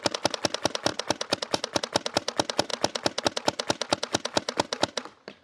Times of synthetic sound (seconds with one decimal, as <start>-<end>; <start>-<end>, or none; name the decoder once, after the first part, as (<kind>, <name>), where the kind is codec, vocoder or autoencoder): none